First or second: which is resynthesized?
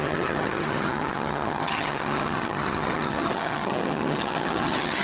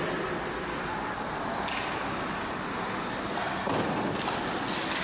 first